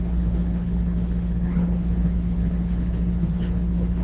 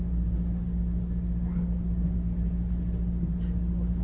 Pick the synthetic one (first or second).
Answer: first